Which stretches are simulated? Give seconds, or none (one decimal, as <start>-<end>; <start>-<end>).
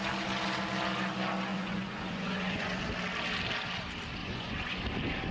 1.5-2.8; 4.2-4.8